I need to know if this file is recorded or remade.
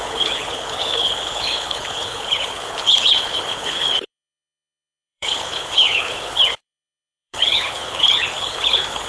remade